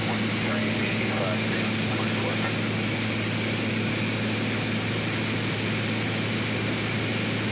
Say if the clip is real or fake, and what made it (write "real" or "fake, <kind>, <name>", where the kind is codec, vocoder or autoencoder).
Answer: real